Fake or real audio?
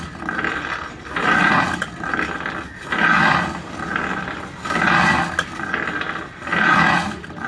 real